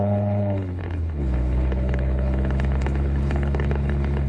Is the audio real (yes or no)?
no